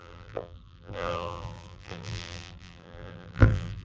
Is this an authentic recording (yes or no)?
no